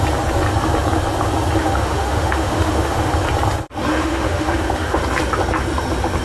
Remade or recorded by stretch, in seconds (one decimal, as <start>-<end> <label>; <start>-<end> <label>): 0.0-1.6 recorded; 1.6-3.1 remade; 3.1-3.9 recorded; 3.9-5.0 remade; 5.0-6.2 recorded